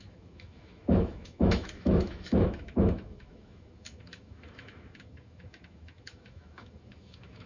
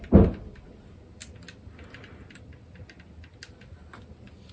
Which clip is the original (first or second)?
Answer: second